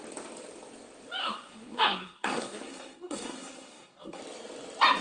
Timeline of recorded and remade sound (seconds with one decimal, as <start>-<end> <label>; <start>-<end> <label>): 0.0-1.2 recorded; 1.2-4.2 remade; 4.2-5.0 recorded